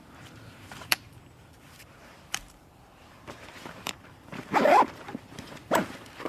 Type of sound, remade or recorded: remade